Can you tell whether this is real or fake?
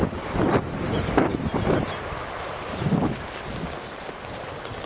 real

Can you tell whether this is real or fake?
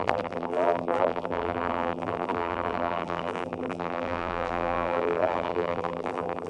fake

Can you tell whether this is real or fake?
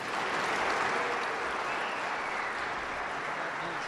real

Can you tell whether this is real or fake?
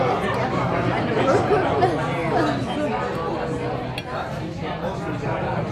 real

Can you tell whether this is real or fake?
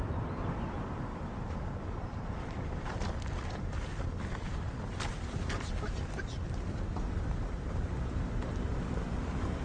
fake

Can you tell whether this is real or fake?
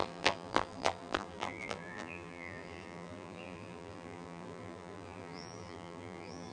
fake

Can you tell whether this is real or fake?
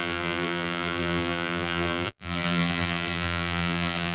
fake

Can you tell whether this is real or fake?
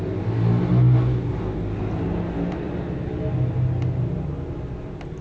real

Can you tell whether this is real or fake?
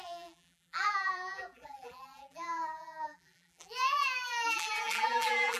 fake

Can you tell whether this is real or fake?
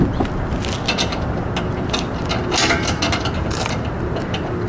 real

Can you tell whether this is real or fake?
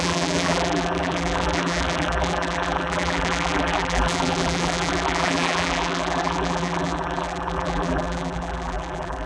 fake